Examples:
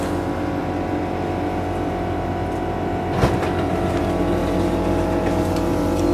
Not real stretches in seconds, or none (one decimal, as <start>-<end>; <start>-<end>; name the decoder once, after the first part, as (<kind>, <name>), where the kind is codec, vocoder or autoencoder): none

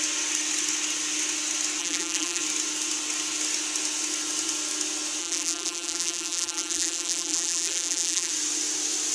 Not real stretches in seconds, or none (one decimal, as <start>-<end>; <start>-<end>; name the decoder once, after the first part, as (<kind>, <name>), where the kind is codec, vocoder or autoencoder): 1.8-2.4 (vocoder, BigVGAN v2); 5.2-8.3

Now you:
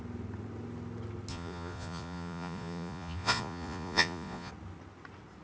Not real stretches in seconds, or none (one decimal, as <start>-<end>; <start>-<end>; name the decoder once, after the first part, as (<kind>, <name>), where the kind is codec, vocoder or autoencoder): 1.3-4.5 (vocoder, Vocos)